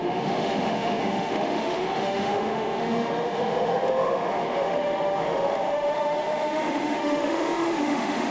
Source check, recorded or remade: remade